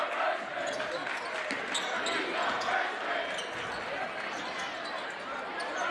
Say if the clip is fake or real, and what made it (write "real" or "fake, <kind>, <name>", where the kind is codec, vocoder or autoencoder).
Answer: real